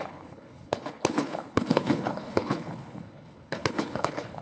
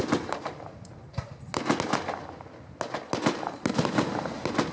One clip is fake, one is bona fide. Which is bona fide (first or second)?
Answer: second